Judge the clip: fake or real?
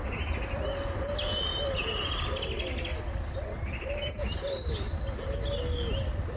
real